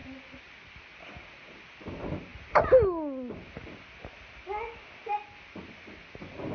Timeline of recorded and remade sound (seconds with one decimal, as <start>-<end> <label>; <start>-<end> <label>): 0.0-6.5 recorded